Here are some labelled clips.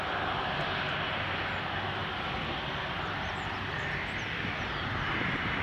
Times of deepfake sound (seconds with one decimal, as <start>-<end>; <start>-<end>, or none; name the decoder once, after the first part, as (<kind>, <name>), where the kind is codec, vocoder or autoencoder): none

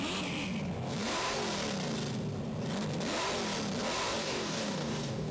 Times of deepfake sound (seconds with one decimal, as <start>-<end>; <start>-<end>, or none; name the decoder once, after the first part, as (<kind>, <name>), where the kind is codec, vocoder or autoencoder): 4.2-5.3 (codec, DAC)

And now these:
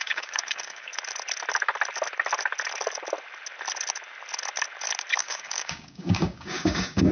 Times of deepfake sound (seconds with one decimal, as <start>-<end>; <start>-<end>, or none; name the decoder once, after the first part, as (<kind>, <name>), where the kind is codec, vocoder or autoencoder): 0.0-0.9 (codec, DAC); 5.2-7.1

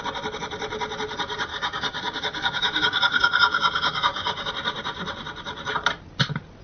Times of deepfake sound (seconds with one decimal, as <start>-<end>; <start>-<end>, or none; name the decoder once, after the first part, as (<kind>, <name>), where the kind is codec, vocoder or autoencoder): 1.5-4.5 (codec, DAC)

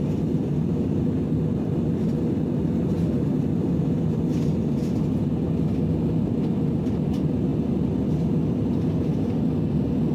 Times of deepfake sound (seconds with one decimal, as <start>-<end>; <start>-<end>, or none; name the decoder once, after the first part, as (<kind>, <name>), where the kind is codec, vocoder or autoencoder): none

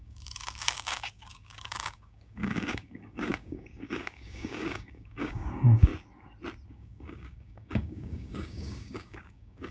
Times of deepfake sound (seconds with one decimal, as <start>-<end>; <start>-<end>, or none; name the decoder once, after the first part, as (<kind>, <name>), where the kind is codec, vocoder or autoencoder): 0.0-5.9 (codec, DAC); 6.7-9.7